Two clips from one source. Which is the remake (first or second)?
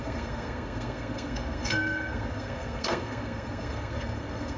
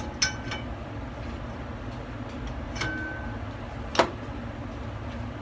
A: first